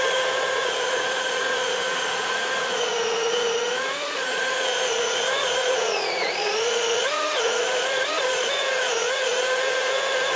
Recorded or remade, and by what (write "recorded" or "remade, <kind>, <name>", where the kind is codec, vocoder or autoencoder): remade, vocoder, Vocos